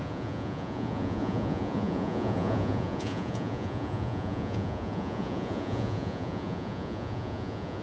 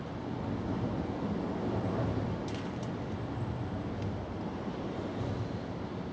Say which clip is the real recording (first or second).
second